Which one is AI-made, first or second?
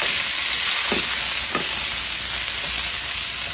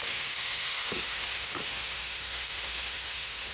second